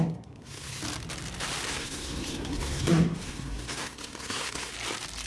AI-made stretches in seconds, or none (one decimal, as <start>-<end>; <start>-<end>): 0.0-0.8; 1.7-4.7